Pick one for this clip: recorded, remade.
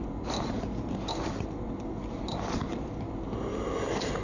recorded